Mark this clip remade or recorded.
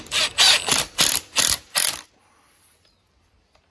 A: recorded